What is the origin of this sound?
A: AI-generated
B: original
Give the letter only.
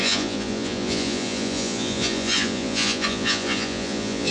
A